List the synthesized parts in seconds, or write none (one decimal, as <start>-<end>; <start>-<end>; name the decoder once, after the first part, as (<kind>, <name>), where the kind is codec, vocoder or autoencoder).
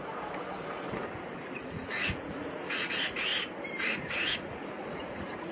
1.4-3.3 (vocoder, Vocos); 3.8-5.5